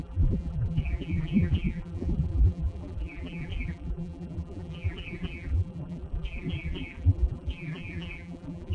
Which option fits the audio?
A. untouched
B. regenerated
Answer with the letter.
B